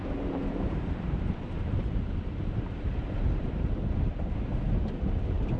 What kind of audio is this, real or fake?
fake